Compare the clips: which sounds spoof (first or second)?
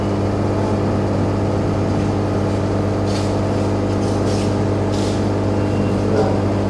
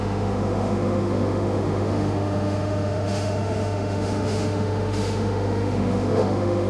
second